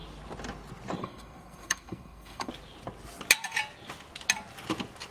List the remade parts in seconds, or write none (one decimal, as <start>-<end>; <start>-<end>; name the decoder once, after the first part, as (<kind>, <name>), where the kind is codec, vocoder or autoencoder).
1.0-2.5 (codec, SNAC)